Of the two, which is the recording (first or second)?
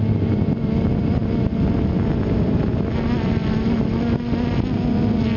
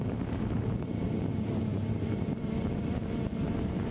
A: first